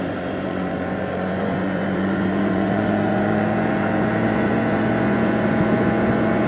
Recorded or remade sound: remade